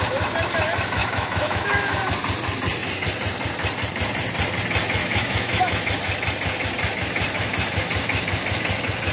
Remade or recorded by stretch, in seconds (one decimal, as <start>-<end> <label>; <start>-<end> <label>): 0.0-1.0 recorded; 1.0-2.1 remade; 2.1-5.0 recorded; 5.0-5.9 remade; 5.9-9.1 recorded